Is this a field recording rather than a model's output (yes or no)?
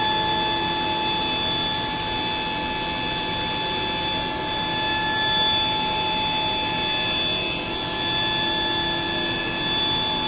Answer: yes